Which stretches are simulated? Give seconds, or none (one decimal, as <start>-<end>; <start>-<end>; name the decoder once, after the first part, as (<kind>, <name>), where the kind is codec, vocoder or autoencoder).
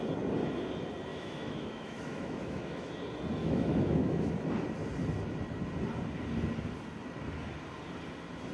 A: 1.1-2.9 (autoencoder, DAC-VAE); 3.4-4.3